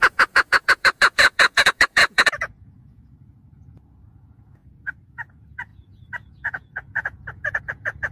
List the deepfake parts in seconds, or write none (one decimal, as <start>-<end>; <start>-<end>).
0.0-8.1

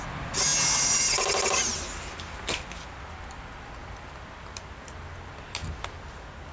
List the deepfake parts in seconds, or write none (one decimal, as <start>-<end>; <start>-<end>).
none

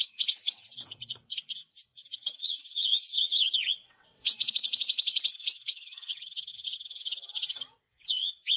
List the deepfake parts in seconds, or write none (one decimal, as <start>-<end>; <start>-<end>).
0.0-8.6

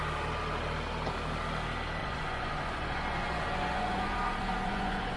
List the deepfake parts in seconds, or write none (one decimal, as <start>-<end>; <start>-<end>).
2.0-5.2

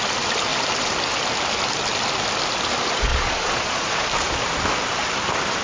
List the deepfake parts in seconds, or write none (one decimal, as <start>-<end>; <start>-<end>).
3.1-4.1

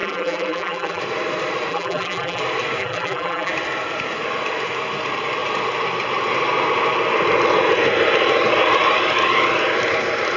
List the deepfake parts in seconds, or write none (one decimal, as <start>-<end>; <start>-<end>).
0.0-1.0; 1.7-2.4; 2.8-3.5

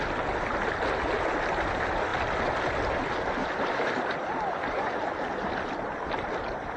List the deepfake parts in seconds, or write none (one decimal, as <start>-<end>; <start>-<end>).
3.4-5.5

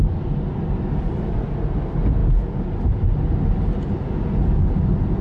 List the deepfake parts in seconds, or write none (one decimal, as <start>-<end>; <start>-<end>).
none